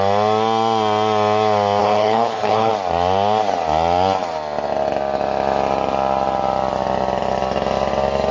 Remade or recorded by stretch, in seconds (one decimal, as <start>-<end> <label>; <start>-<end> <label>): 0.0-1.8 recorded; 1.8-2.7 remade; 2.7-8.3 recorded